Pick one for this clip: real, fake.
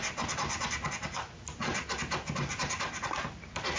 real